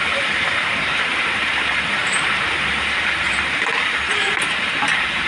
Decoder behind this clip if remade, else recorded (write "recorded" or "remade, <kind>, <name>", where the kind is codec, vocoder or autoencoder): remade, vocoder, BigVGAN v2